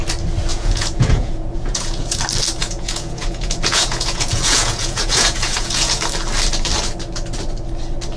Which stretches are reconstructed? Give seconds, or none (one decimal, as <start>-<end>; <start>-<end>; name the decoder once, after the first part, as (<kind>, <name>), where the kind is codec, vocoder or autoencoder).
0.5-2.2 (vocoder, Vocos); 2.6-6.0